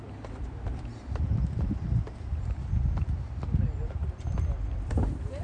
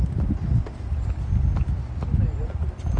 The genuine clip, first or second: second